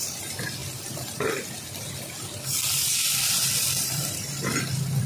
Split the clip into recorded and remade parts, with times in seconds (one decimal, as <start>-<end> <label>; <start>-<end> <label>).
0.0-5.1 remade

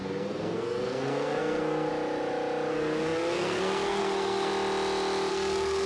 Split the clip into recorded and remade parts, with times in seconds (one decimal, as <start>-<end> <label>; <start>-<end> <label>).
0.0-1.9 remade; 1.9-2.7 recorded; 2.7-4.5 remade; 4.5-5.3 recorded; 5.3-5.9 remade

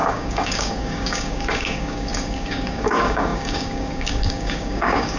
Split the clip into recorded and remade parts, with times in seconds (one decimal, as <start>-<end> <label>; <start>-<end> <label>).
0.0-5.2 remade

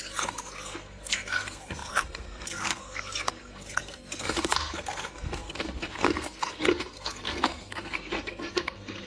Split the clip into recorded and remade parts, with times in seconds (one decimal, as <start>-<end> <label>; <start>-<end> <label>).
0.0-9.1 remade

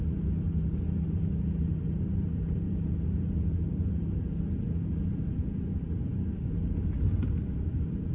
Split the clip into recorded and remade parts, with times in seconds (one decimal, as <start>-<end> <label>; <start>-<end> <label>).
0.0-8.1 recorded

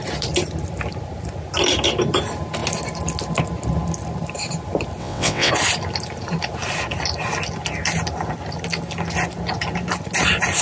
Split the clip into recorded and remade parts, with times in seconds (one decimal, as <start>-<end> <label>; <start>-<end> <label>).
0.0-5.0 recorded; 5.0-5.5 remade; 5.5-10.6 recorded

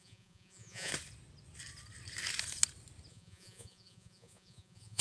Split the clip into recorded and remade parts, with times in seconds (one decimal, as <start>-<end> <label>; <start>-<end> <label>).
0.0-0.9 remade; 0.9-3.1 recorded; 3.1-5.0 remade

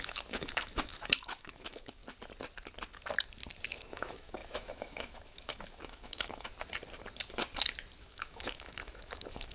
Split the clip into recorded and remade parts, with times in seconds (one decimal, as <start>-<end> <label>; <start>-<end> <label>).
0.0-2.0 remade; 2.0-3.7 recorded; 3.7-6.5 remade; 6.5-8.0 recorded; 8.0-9.5 remade